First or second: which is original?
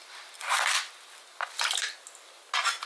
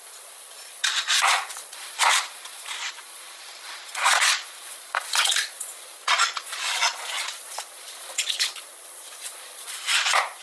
first